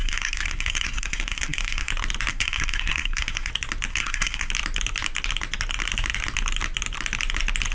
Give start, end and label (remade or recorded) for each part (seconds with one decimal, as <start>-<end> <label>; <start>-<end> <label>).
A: 0.0-1.9 remade; 1.9-2.3 recorded; 2.3-3.5 remade; 3.5-3.9 recorded; 3.9-4.5 remade; 4.5-7.7 recorded